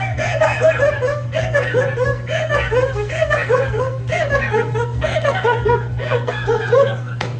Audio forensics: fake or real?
fake